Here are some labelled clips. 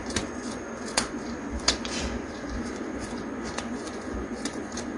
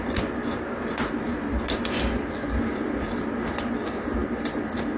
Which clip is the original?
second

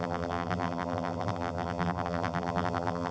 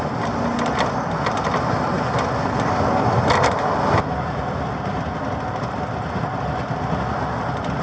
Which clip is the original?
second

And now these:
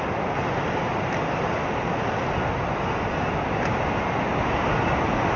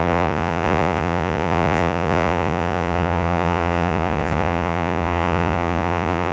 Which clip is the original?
first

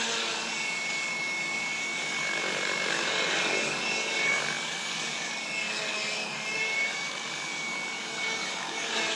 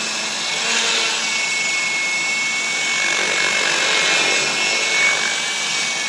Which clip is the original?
second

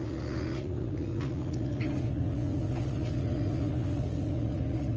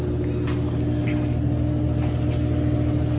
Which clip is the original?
second